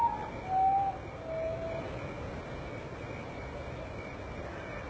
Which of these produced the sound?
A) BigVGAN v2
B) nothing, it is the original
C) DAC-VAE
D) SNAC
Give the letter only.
B